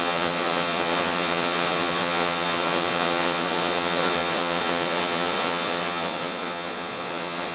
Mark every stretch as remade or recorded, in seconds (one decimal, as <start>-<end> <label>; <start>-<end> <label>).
0.0-7.5 remade